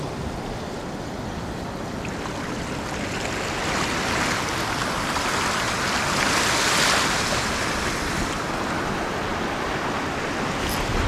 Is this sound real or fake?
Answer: real